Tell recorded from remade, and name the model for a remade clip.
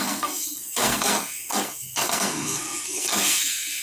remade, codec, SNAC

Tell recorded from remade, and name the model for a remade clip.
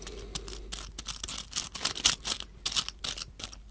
recorded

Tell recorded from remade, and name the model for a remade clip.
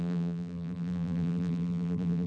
remade, vocoder, BigVGAN v2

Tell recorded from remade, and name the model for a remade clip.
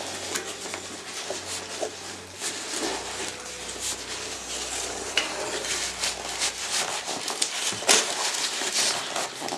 recorded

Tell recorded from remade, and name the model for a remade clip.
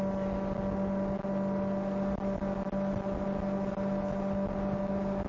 recorded